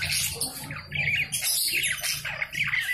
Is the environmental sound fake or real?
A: real